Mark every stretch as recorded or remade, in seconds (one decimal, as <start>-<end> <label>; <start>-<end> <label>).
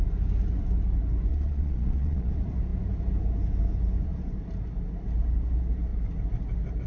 0.0-1.3 recorded; 1.3-2.3 remade; 2.3-6.9 recorded